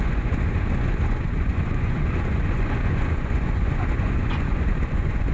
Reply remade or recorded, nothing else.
remade